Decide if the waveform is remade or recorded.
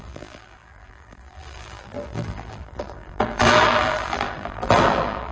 remade